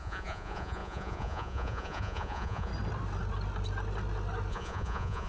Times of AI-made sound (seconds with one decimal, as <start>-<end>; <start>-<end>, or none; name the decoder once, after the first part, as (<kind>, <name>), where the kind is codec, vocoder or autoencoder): 0.0-2.7 (vocoder, Vocos); 4.5-5.3